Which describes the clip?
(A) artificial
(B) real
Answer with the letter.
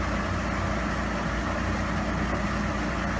B